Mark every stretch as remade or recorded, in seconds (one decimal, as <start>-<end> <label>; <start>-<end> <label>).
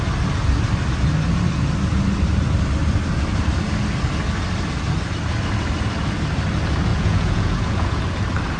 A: 0.0-6.9 recorded; 6.9-8.0 remade; 8.0-8.6 recorded